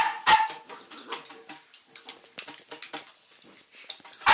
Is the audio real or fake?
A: real